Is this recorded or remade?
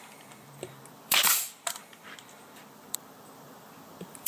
remade